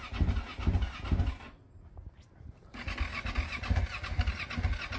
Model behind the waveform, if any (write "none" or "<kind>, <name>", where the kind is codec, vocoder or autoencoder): none